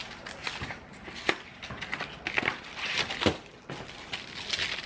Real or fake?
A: real